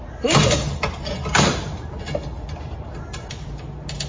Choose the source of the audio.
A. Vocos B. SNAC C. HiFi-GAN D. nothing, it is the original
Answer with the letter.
D